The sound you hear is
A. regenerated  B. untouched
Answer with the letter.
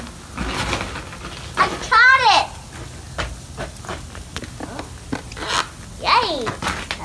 B